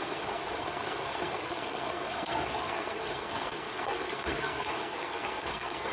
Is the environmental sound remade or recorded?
remade